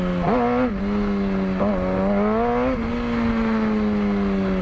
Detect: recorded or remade recorded